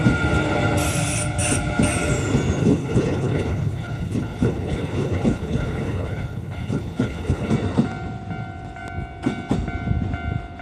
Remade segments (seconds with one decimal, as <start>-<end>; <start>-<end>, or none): 2.6-7.5